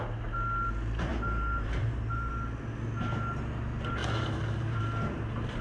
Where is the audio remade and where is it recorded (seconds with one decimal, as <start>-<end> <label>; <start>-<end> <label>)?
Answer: 0.0-1.1 recorded; 1.1-2.3 remade; 2.3-4.0 recorded; 4.0-4.8 remade; 4.8-5.6 recorded